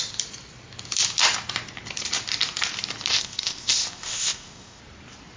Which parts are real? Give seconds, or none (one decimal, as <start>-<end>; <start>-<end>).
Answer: 0.0-3.1; 4.8-5.4